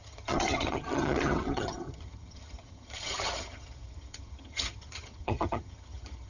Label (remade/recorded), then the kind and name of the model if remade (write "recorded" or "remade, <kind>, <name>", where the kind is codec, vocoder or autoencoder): remade, vocoder, HiFi-GAN